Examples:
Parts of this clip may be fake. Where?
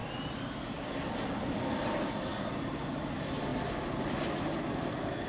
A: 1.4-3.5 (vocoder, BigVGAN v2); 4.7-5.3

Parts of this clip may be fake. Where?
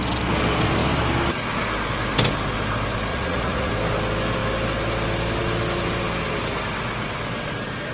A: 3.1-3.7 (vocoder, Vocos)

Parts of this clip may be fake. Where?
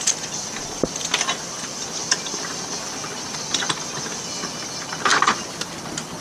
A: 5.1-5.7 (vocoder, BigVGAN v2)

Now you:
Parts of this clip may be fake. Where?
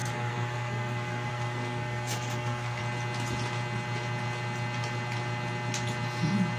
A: 0.0-2.8 (codec, SNAC)